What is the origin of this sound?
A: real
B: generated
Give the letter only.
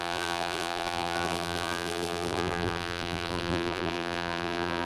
B